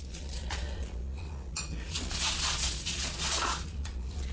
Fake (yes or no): yes